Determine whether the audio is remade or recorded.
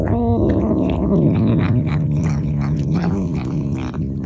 recorded